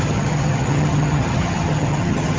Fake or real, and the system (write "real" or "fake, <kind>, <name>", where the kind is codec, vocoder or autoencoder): fake, vocoder, HiFi-GAN